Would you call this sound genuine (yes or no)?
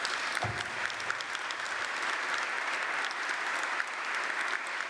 yes